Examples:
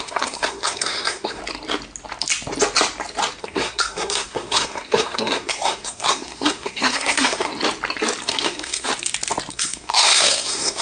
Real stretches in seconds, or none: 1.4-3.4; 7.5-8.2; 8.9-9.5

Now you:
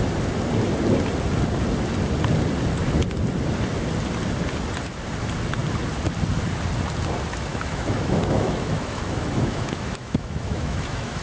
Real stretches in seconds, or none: 0.0-7.5

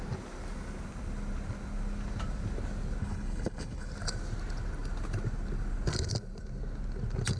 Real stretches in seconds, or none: 0.0-3.0; 3.9-7.4